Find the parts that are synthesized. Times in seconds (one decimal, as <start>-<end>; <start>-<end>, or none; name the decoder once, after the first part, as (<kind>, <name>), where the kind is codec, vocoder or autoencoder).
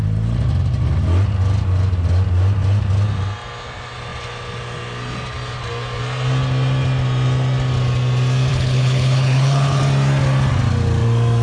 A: 8.5-9.8 (codec, HILCodec)